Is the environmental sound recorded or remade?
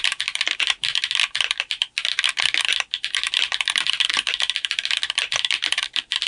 remade